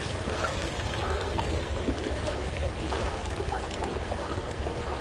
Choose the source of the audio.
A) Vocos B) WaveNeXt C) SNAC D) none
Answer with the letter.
C